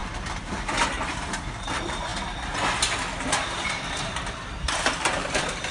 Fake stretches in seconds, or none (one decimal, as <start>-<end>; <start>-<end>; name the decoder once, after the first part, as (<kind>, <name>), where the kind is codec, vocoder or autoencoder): 0.0-2.1 (vocoder, BigVGAN v2); 4.6-5.7